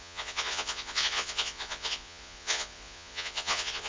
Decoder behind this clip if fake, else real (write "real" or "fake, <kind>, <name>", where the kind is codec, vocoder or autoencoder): fake, vocoder, Vocos